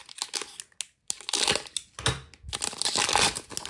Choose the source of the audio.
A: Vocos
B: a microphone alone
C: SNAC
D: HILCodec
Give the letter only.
B